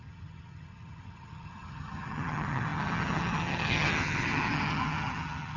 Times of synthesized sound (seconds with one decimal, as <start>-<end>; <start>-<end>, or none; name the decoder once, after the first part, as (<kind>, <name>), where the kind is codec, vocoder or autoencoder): 0.0-5.6 (vocoder, HiFi-GAN)